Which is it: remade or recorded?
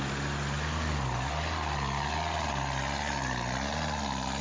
recorded